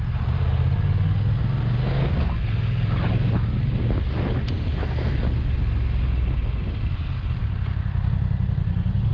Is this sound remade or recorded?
recorded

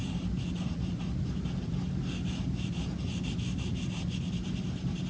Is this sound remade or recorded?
recorded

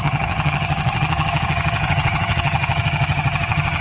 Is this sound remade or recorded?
remade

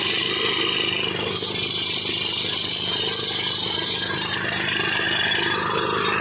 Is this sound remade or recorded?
recorded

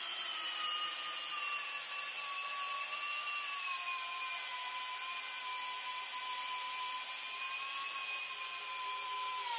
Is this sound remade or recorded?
recorded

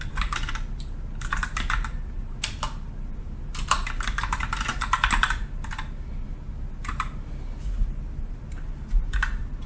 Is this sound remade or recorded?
recorded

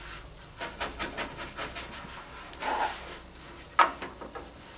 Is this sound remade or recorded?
recorded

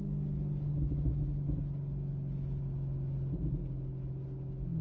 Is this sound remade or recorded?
recorded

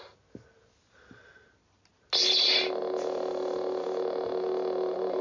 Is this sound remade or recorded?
recorded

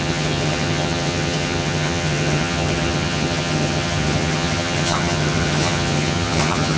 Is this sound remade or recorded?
remade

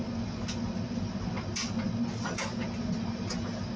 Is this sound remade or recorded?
recorded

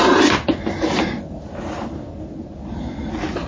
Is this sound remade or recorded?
recorded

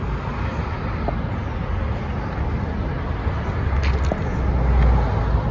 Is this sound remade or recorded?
recorded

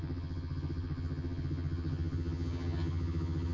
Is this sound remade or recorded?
remade